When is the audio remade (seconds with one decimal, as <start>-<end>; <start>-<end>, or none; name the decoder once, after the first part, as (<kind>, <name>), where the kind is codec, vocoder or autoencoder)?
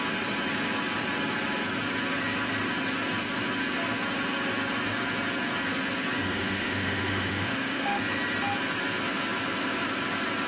6.3-8.0 (autoencoder, DAC-VAE)